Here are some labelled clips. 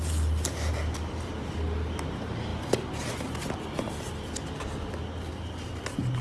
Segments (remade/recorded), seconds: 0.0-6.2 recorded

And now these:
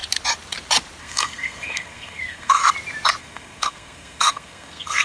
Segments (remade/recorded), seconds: 0.0-1.0 recorded; 1.0-2.6 remade; 2.6-3.2 recorded; 3.2-5.0 remade

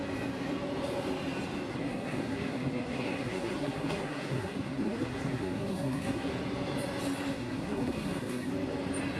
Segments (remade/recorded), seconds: 0.0-1.7 recorded; 1.7-6.3 remade; 6.3-7.3 recorded; 7.3-8.5 remade; 8.5-9.2 recorded

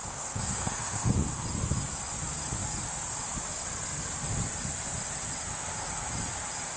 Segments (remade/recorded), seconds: 0.0-1.1 remade; 1.1-6.8 recorded

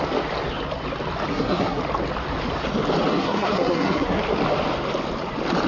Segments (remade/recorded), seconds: 0.0-1.3 recorded; 1.3-1.8 remade; 1.8-3.1 recorded; 3.1-4.2 remade; 4.2-5.7 recorded